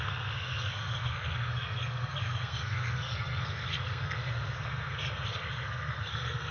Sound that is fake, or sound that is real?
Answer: fake